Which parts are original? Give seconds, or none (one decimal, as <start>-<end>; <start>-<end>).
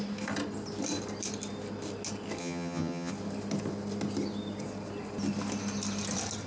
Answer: 0.0-2.4; 3.1-6.5